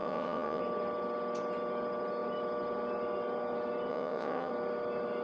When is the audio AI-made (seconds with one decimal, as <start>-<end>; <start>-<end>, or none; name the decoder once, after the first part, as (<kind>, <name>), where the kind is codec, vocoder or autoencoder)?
0.0-0.6 (vocoder, WaveNeXt); 3.9-4.5